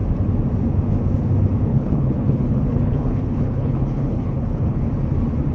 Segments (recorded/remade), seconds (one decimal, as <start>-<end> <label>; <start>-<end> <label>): 0.0-1.7 recorded; 1.7-4.8 remade; 4.8-5.5 recorded